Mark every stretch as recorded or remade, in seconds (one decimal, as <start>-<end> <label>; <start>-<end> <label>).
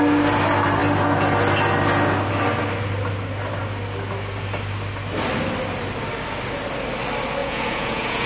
0.0-7.4 recorded; 7.4-8.3 remade